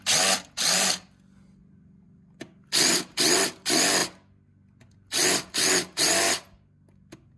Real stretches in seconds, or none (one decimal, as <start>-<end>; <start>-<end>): 0.0-7.4